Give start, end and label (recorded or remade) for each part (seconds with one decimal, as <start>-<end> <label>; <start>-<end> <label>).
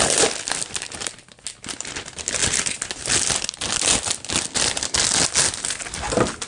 0.0-6.5 recorded